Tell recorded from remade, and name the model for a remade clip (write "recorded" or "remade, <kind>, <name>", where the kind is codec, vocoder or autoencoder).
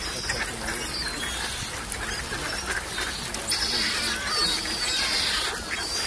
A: recorded